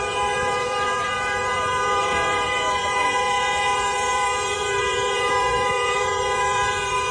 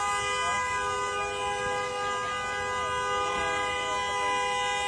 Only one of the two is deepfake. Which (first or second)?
first